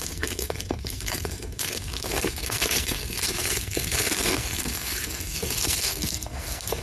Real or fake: fake